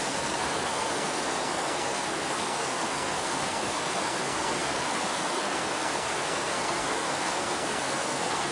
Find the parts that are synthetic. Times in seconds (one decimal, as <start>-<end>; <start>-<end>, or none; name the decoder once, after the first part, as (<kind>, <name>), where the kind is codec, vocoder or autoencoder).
0.0-8.5 (codec, SNAC)